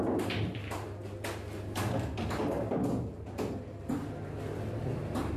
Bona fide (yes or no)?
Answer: yes